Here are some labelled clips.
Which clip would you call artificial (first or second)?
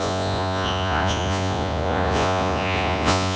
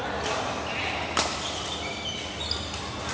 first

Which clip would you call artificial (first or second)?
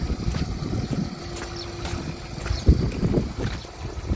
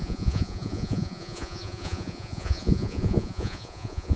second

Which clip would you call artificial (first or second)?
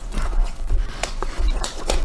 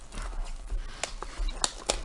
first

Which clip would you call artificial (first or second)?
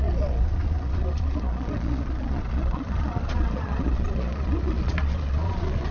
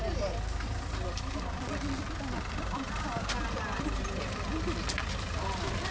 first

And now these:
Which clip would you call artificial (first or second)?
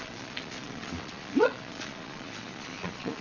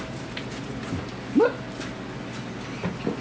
first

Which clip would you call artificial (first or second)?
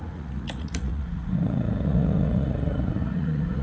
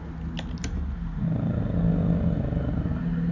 first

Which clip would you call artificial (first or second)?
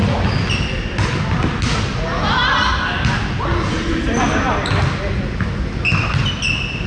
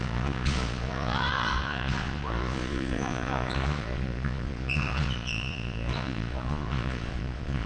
second